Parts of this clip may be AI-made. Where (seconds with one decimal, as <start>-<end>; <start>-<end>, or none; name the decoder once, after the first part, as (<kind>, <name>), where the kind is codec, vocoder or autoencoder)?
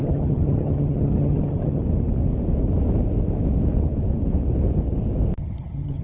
0.0-1.8 (vocoder, HiFi-GAN); 5.4-6.0